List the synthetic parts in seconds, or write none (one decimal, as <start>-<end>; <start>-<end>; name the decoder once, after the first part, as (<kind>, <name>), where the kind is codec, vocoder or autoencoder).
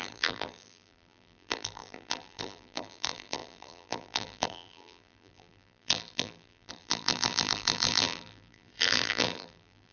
0.0-9.9 (vocoder, BigVGAN v2)